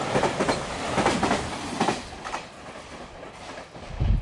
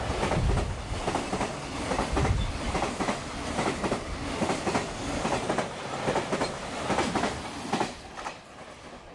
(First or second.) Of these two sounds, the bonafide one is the second